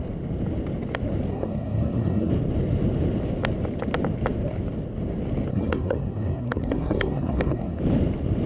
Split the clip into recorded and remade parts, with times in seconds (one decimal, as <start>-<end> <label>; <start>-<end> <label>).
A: 0.0-1.3 recorded; 1.3-2.3 remade; 2.3-5.5 recorded; 5.5-7.8 remade; 7.8-8.5 recorded